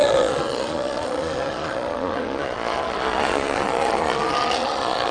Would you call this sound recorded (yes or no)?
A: no